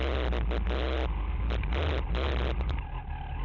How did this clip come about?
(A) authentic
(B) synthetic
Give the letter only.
A